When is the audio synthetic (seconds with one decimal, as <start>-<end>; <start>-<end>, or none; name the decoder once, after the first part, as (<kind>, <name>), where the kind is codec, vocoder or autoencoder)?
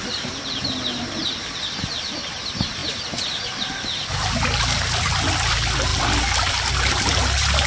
none